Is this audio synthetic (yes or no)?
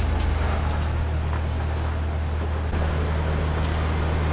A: no